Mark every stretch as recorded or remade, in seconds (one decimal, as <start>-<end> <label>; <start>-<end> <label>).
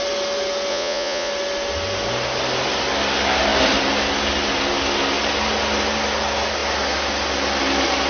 0.0-0.7 recorded; 0.7-1.3 remade; 1.3-8.1 recorded